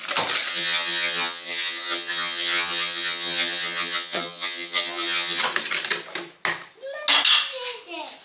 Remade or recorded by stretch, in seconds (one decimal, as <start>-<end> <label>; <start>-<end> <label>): 0.0-0.5 recorded; 0.5-5.4 remade; 5.4-8.2 recorded